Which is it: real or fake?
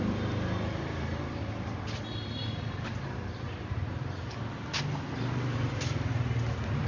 real